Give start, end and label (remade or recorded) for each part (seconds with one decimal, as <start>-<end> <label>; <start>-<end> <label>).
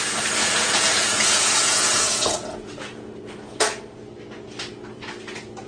0.0-0.4 recorded; 0.4-3.8 remade; 3.8-5.7 recorded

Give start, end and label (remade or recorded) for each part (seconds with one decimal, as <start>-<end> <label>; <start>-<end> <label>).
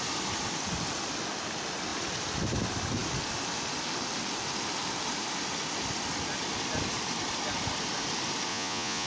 0.0-8.5 recorded; 8.5-9.1 remade